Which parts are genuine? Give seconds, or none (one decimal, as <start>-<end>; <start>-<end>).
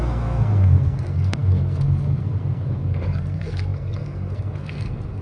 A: none